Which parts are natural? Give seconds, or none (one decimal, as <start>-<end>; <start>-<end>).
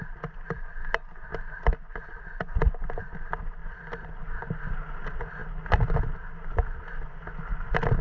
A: 0.0-8.0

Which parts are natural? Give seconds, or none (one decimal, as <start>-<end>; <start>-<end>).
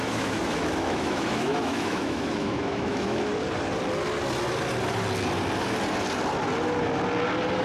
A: 3.3-7.6